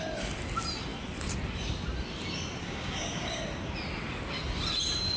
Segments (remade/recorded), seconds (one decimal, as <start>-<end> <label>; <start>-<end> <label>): 0.0-2.6 recorded; 2.6-3.4 remade; 3.4-5.2 recorded